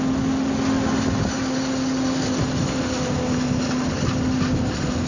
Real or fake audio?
real